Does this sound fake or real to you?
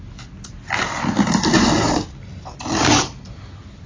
real